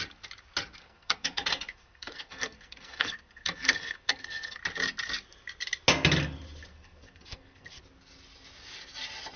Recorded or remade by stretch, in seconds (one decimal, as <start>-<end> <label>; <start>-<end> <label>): 0.0-0.8 recorded; 0.8-4.6 remade; 4.6-6.7 recorded; 6.7-7.8 remade; 7.8-9.4 recorded